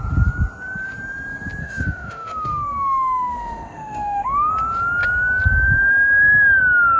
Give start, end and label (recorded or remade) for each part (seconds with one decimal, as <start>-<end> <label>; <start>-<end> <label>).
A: 0.0-1.6 recorded; 1.6-4.5 remade; 4.5-7.0 recorded